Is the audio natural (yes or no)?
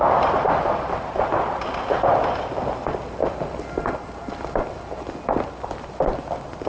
yes